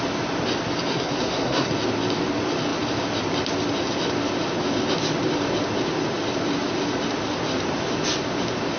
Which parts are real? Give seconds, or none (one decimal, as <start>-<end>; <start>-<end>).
0.0-0.9; 1.7-8.8